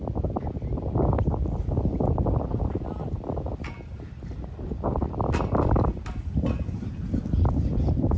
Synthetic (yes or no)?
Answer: no